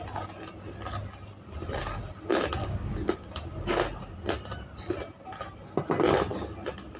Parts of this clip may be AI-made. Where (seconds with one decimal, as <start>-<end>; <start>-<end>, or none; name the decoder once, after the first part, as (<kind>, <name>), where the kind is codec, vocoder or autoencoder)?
2.6-3.3 (codec, DAC)